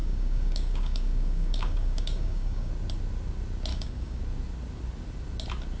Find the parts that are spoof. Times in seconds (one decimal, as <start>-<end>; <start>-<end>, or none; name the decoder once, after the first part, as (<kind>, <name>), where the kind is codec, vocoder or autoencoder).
0.0-2.7 (codec, DAC); 3.7-4.2